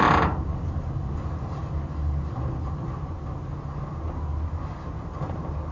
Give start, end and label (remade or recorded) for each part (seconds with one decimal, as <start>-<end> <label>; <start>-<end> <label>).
0.0-5.7 recorded